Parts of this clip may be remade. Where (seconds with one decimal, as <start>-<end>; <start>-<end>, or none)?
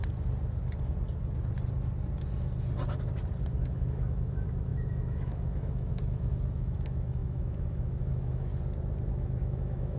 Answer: 3.6-8.5; 9.1-10.0